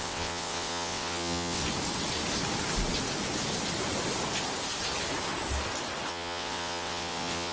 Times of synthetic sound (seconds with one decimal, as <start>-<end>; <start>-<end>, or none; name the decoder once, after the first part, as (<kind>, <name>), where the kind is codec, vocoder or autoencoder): 0.0-1.6 (vocoder, WaveNeXt); 6.1-7.5